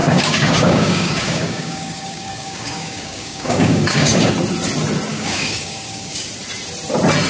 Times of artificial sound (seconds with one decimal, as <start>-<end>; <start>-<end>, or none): 0.0-4.3; 5.1-6.3